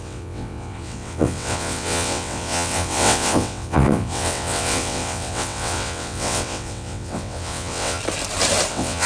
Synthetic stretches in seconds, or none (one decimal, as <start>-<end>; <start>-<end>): 0.0-8.0; 8.7-9.1

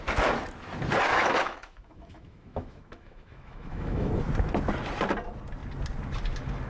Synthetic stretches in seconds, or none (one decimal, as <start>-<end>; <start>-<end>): 1.1-4.1

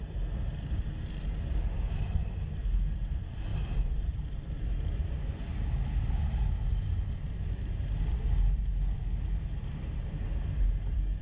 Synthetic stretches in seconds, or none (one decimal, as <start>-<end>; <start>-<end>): 3.5-5.3

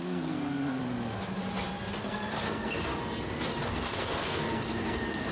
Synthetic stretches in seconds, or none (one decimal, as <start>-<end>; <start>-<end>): 0.0-0.8; 2.0-2.9; 3.7-5.3

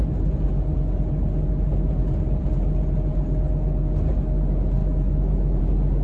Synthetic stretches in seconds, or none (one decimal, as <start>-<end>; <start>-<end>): 4.8-5.6